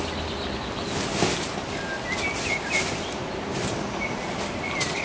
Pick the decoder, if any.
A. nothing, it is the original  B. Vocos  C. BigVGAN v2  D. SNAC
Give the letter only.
A